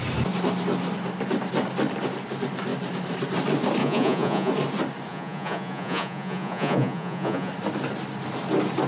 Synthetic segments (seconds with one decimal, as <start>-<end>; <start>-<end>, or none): 3.8-4.5; 5.1-7.5